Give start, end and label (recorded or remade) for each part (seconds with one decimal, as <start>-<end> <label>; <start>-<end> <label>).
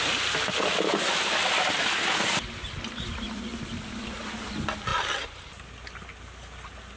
0.0-7.0 recorded